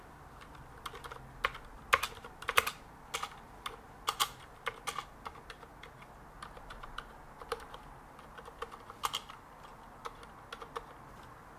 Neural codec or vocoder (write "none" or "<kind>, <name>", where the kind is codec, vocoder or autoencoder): none